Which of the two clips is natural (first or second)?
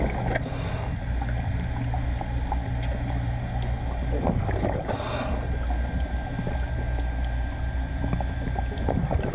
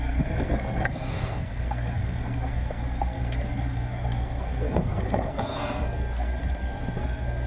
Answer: first